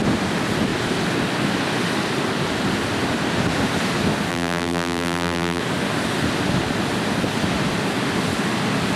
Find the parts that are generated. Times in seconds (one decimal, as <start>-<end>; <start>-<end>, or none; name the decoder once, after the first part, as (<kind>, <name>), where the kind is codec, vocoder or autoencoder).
4.3-5.6 (vocoder, BigVGAN v2)